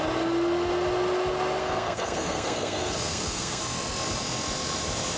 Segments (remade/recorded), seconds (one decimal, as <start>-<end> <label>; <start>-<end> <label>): 0.0-1.6 recorded; 1.6-3.6 remade; 3.6-5.2 recorded